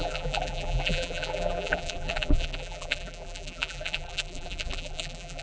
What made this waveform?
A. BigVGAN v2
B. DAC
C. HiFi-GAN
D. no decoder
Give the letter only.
A